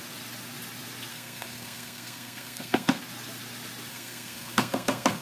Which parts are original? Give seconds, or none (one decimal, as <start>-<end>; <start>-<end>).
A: 0.0-1.1; 3.0-3.9